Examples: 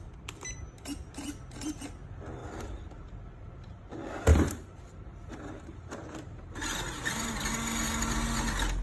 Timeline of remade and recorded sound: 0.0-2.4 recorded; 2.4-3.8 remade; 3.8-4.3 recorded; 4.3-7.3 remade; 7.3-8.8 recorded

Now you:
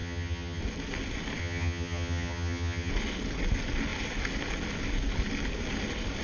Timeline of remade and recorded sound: 0.0-0.6 remade; 0.6-1.4 recorded; 1.4-2.9 remade; 2.9-6.2 recorded

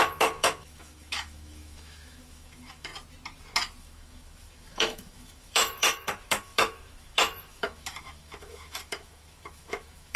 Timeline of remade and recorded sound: 0.0-2.9 remade; 2.9-3.8 recorded; 3.8-10.2 remade

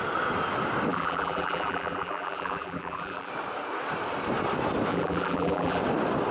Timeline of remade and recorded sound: 0.0-0.9 recorded; 0.9-3.3 remade; 3.3-4.9 recorded; 4.9-5.8 remade; 5.8-6.3 recorded